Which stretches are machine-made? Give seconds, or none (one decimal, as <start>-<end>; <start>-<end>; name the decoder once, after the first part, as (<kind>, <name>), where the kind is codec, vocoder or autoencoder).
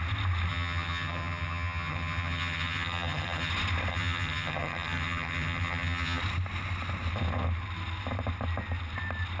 0.5-3.5 (vocoder, HiFi-GAN); 3.9-6.2